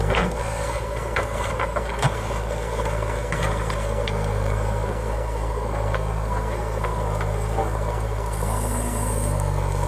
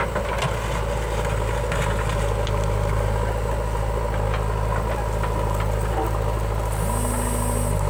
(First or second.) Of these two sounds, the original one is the second